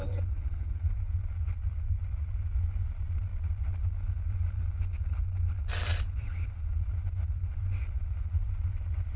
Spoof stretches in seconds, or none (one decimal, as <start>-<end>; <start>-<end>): 5.9-7.8